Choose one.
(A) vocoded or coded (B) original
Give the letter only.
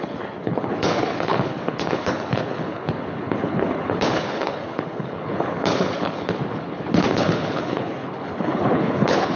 A